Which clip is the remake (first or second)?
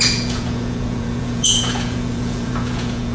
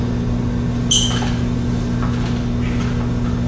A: first